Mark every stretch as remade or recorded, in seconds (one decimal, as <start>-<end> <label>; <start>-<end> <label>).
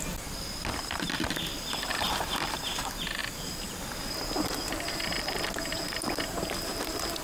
0.0-7.2 recorded